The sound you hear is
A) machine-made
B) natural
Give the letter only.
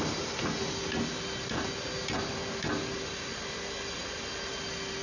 B